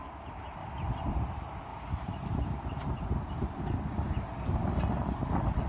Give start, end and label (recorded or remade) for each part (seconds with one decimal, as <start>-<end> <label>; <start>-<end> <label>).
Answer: 0.0-0.6 remade; 0.6-1.1 recorded; 1.1-5.7 remade